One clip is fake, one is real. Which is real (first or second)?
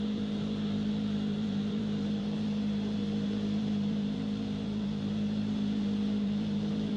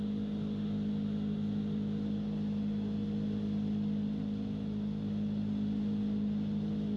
second